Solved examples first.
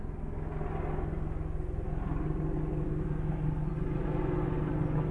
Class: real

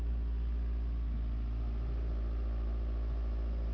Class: real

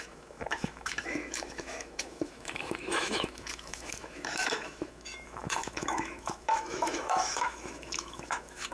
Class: fake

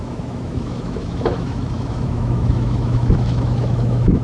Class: fake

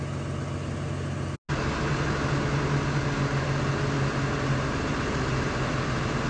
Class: real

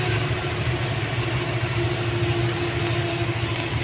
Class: real